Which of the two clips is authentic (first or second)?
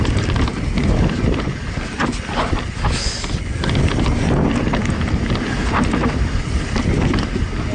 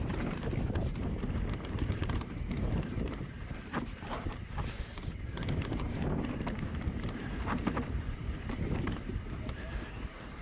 first